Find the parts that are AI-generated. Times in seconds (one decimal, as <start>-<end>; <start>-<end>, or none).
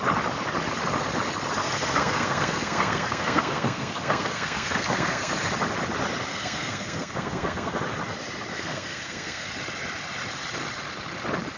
1.6-5.3; 6.3-7.8; 8.5-9.5